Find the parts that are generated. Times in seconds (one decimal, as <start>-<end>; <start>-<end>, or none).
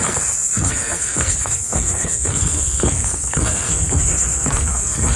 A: 0.0-5.2